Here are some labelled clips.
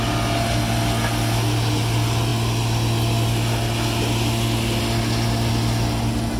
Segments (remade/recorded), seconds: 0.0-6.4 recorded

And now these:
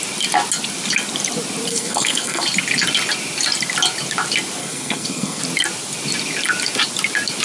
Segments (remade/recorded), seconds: 0.0-1.7 recorded; 1.7-2.4 remade; 2.4-4.6 recorded; 4.6-5.4 remade; 5.4-7.4 recorded

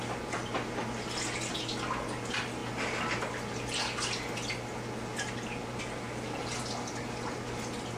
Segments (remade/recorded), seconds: 0.0-8.0 recorded

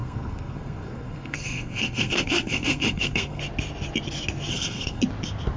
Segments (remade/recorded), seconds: 0.0-3.4 remade; 3.4-4.5 recorded; 4.5-5.0 remade; 5.0-5.6 recorded

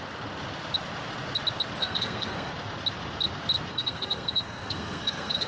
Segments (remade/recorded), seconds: 0.0-1.8 recorded; 1.8-2.5 remade; 2.5-3.7 recorded; 3.7-5.5 remade